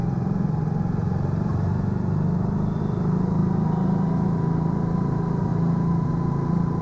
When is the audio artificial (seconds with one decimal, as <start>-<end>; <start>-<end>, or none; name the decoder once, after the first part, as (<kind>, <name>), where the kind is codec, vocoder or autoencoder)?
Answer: none